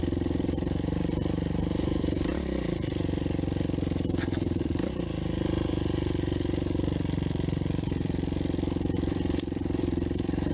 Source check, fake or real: fake